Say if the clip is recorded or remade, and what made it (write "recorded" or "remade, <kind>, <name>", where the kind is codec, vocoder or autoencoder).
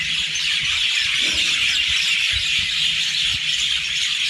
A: recorded